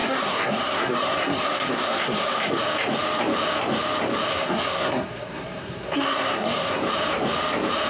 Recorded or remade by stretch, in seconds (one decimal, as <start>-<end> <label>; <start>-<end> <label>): 0.0-2.6 remade; 2.6-4.3 recorded; 4.3-6.8 remade; 6.8-7.9 recorded